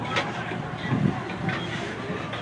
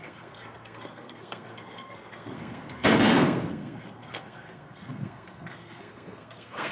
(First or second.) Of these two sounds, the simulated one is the second